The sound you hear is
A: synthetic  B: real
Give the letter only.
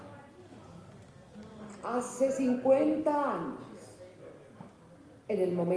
B